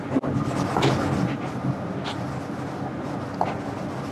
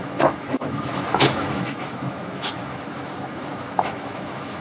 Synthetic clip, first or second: second